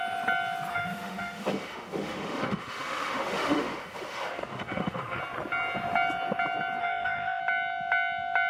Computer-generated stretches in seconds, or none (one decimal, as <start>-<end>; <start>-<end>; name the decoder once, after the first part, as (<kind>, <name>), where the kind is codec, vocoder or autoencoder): 0.7-5.2 (autoencoder, DAC-VAE); 6.8-7.4